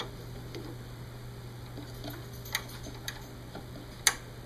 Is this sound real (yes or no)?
yes